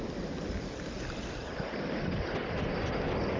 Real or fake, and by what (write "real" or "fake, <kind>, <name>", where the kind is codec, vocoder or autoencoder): real